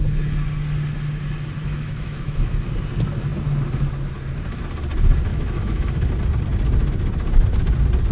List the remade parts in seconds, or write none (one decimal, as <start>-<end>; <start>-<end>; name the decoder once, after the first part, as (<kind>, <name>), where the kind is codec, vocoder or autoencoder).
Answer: 1.6-2.5 (autoencoder, DAC-VAE); 5.3-6.1